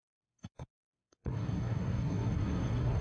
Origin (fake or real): fake